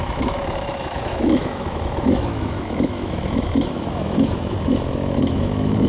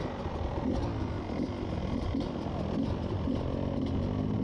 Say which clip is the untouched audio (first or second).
second